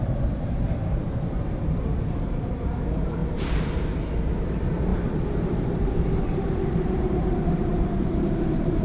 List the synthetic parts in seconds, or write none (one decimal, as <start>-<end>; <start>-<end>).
0.0-3.2; 4.5-4.9; 5.5-8.8